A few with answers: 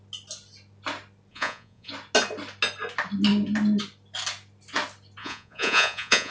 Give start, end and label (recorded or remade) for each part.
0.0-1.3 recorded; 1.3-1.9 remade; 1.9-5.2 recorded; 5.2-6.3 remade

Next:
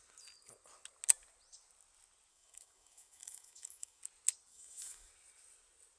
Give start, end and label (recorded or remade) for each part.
0.0-2.3 recorded; 2.3-4.0 remade; 4.0-4.5 recorded; 4.5-5.1 remade; 5.1-6.0 recorded

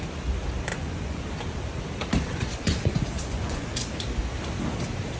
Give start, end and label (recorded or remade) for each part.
0.0-0.7 recorded; 0.7-1.2 remade; 1.2-2.3 recorded; 2.3-3.9 remade; 3.9-5.2 recorded

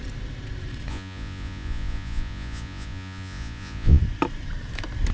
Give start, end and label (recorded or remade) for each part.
0.0-0.9 recorded; 0.9-4.0 remade; 4.0-5.1 recorded

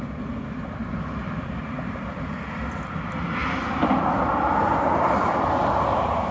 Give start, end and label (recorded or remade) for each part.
0.0-6.3 recorded

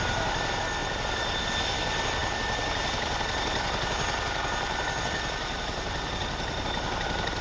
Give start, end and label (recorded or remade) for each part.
0.0-0.8 recorded; 0.8-1.4 remade; 1.4-2.2 recorded; 2.2-6.6 remade; 6.6-7.4 recorded

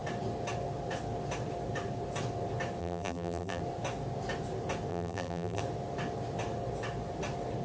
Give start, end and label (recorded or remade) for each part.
0.0-2.8 recorded; 2.8-3.6 remade; 3.6-4.9 recorded; 4.9-5.6 remade; 5.6-7.6 recorded

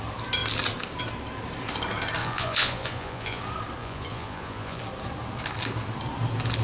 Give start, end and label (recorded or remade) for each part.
0.0-2.2 recorded; 2.2-3.4 remade; 3.4-3.8 recorded; 3.8-4.8 remade; 4.8-6.6 recorded